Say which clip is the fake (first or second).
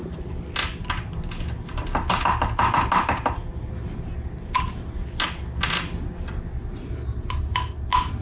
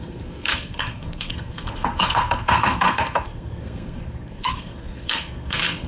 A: second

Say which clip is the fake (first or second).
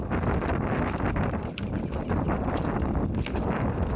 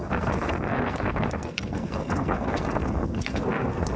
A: second